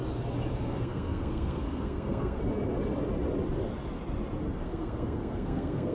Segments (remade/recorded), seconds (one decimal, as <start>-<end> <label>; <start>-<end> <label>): 0.0-0.5 recorded; 0.5-2.4 remade; 2.4-4.6 recorded; 4.6-5.9 remade

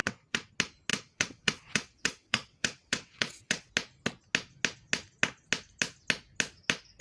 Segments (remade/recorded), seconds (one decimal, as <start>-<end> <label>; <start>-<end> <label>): 0.0-0.5 remade; 0.5-0.9 recorded; 0.9-3.7 remade; 3.7-7.0 recorded

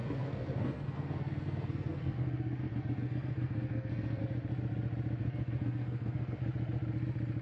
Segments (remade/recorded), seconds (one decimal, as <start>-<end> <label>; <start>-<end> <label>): 0.0-4.2 remade; 4.2-5.2 recorded; 5.2-6.4 remade; 6.4-7.4 recorded

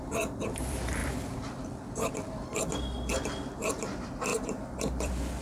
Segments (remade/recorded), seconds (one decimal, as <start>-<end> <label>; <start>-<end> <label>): 0.0-2.5 remade; 2.5-3.1 recorded; 3.1-4.3 remade; 4.3-5.0 recorded; 5.0-5.4 remade

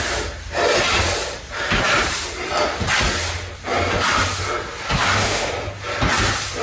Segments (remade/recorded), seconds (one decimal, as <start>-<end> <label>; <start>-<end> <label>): 0.0-5.0 recorded; 5.0-5.5 remade; 5.5-6.6 recorded

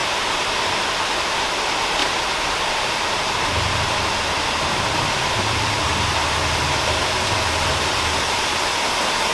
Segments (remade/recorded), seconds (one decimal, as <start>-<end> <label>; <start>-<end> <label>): 0.0-1.2 recorded; 1.2-5.9 remade; 5.9-7.7 recorded; 7.7-9.3 remade